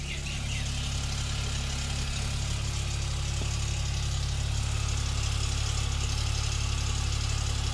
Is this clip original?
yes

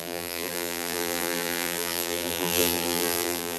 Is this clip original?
no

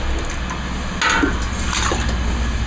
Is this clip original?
yes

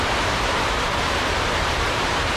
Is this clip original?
no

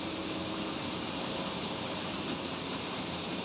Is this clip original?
no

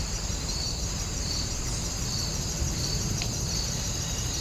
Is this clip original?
no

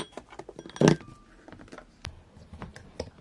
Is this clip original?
yes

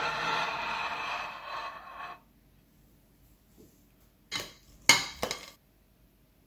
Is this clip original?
yes